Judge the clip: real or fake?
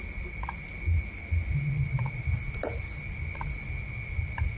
real